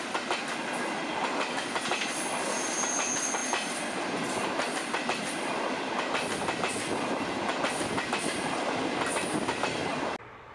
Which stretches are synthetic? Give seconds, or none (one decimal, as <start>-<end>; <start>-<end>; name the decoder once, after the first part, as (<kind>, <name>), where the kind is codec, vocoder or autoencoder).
none